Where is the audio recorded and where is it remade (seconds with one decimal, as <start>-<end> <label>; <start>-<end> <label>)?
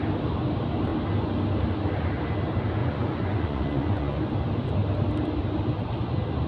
0.0-2.8 recorded; 2.8-4.2 remade; 4.2-6.5 recorded